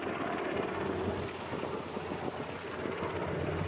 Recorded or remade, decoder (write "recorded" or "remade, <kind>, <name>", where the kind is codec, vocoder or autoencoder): recorded